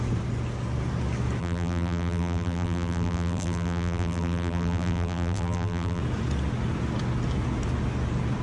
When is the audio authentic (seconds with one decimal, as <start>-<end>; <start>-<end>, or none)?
0.0-1.4; 6.0-8.4